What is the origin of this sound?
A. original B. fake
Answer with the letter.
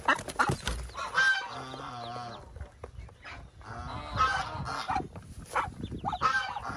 A